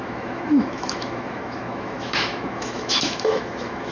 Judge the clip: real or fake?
fake